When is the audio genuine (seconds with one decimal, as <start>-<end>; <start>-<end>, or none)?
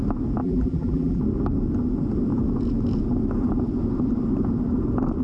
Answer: 0.0-0.4; 1.2-5.2